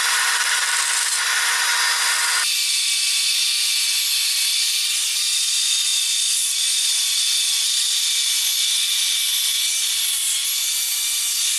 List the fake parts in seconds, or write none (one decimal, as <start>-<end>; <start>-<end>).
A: none